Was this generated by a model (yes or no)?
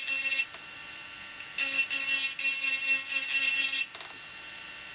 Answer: no